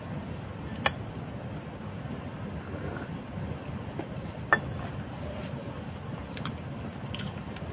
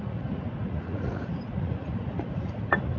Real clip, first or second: first